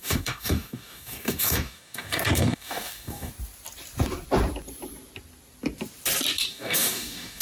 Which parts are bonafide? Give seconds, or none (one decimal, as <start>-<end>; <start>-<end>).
3.3-6.5